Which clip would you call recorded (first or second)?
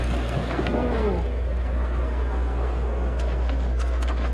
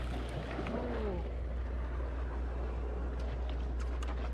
second